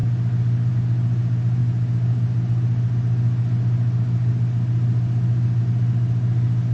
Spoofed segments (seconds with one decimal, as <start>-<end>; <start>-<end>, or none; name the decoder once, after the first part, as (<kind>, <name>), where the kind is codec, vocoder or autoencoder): none